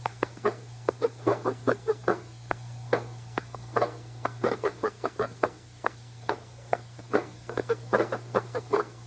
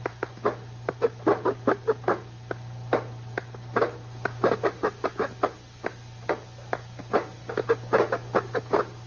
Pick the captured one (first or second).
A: second